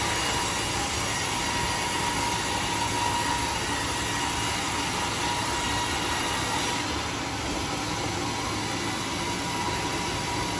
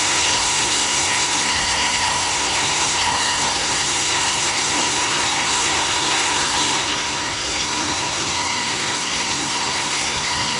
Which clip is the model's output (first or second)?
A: second